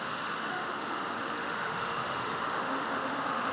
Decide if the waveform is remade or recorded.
remade